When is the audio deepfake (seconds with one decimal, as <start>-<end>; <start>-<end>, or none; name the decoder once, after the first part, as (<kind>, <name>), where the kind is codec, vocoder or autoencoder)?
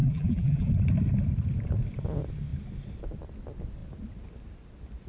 0.0-0.7 (vocoder, BigVGAN v2)